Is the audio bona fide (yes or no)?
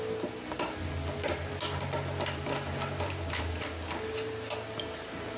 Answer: yes